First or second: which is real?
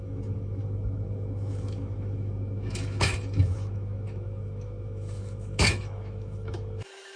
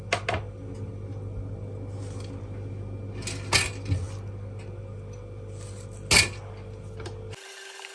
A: second